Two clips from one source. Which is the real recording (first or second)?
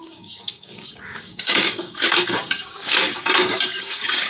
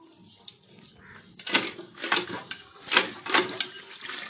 second